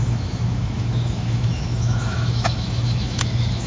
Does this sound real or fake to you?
fake